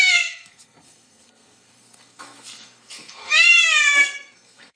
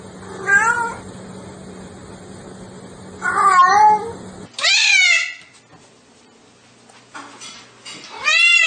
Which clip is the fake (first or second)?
first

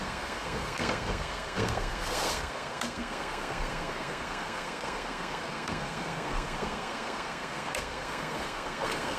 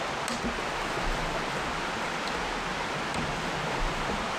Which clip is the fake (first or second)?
first